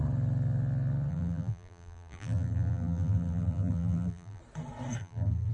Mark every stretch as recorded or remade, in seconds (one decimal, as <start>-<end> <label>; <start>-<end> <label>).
0.0-1.1 recorded; 1.1-4.4 remade; 4.4-5.0 recorded; 5.0-5.5 remade